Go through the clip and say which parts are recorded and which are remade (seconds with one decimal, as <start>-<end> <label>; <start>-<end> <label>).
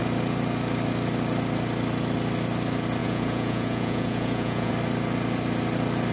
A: 0.0-3.0 recorded; 3.0-4.7 remade; 4.7-6.1 recorded